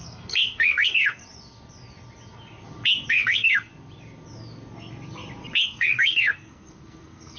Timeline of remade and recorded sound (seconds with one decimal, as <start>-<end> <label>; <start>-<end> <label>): 0.0-1.2 remade; 1.2-3.1 recorded; 3.1-3.7 remade; 3.7-5.6 recorded; 5.6-7.4 remade